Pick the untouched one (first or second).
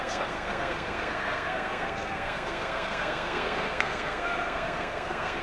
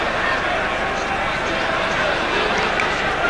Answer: second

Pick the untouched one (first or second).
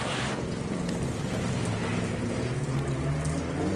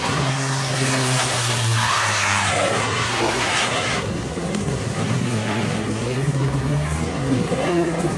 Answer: first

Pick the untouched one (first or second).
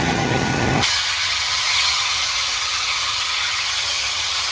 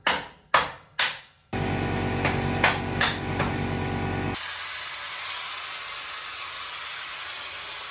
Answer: second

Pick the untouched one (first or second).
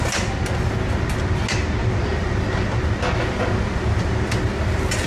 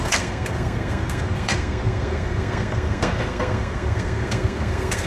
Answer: first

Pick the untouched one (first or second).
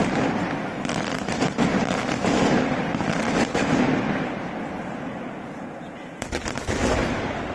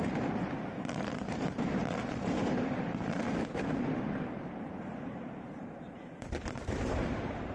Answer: first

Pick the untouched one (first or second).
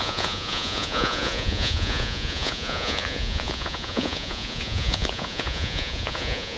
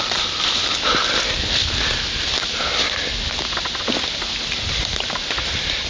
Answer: second